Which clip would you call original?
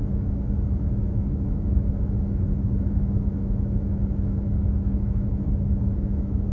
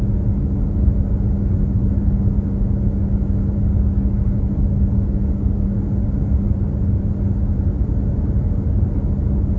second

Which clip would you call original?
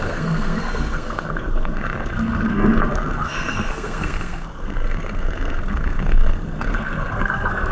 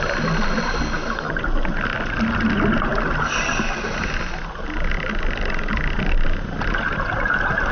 second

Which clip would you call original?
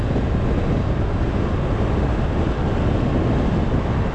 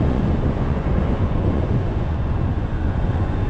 first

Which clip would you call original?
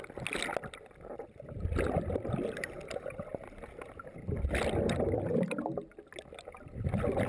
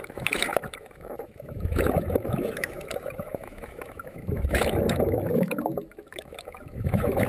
first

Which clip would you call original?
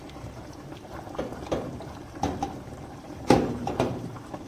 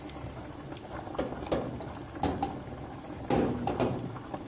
second